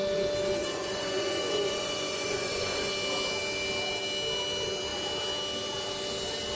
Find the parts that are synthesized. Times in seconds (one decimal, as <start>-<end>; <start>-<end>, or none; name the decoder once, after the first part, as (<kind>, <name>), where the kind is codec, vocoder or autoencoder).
0.6-2.9 (vocoder, Vocos)